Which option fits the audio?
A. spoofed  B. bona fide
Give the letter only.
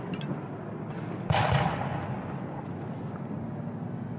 B